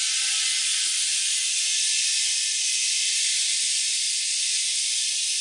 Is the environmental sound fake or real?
real